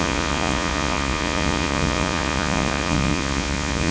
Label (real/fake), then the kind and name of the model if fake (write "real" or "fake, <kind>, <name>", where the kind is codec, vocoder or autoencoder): fake, vocoder, Vocos